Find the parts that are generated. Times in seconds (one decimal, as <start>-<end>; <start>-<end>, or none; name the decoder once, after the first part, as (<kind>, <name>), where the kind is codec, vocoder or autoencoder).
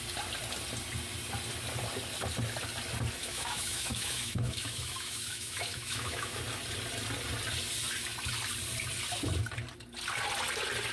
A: 3.2-6.4 (autoencoder, DAC-VAE)